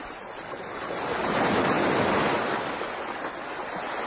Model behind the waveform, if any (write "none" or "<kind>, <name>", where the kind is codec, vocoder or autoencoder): none